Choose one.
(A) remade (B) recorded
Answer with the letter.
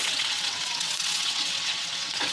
A